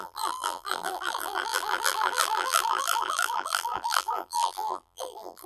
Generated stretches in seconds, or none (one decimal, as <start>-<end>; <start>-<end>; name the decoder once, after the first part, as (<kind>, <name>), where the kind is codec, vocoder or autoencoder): 0.0-5.5 (vocoder, BigVGAN v2)